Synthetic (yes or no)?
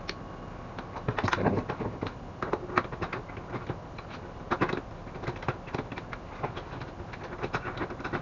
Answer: no